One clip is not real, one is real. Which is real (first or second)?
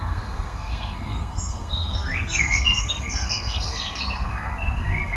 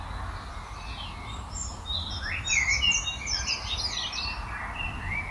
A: second